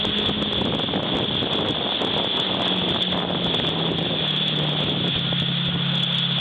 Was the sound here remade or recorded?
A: recorded